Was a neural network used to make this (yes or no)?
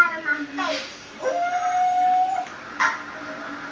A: no